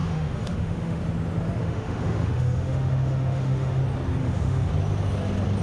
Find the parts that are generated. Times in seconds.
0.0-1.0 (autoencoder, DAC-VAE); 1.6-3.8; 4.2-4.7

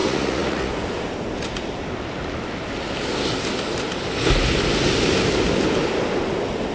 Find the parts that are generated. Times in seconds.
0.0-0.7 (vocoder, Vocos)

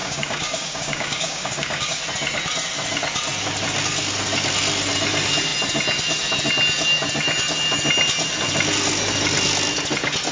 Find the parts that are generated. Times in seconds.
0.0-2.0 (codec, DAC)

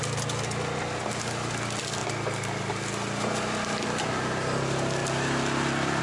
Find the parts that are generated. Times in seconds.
none